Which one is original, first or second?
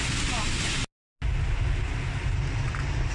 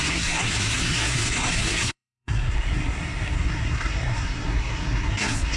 first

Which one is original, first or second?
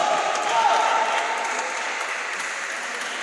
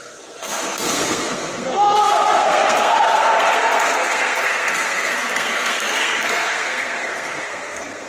first